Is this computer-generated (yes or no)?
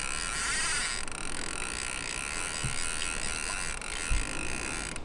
no